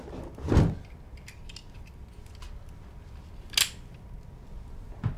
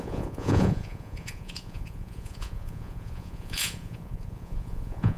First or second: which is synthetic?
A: second